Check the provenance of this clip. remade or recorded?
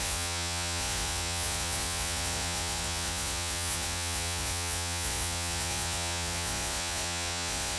remade